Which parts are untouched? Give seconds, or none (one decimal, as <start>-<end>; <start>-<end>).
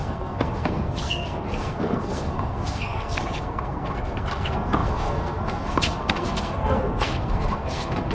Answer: none